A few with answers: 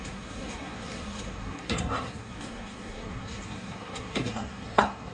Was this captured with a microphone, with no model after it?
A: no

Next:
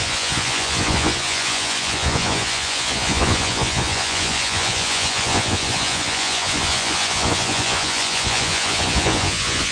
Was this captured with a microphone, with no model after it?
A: no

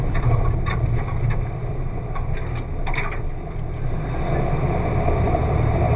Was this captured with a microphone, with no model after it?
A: yes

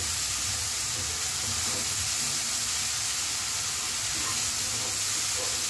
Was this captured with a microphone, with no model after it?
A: yes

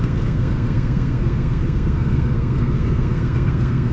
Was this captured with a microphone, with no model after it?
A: no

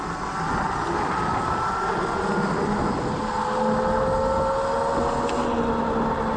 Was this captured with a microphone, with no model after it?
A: yes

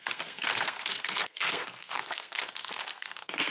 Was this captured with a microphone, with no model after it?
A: no